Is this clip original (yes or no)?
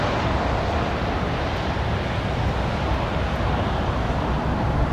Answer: yes